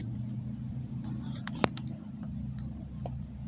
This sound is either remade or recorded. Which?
recorded